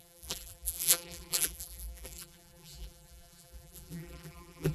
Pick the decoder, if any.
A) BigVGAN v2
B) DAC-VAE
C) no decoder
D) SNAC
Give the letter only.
A